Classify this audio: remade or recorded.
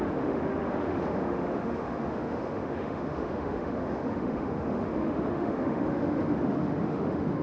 remade